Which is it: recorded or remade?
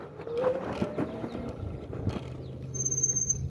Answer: recorded